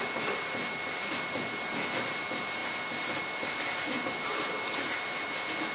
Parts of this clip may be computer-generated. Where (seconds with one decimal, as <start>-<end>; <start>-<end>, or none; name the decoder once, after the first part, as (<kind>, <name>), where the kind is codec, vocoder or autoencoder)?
none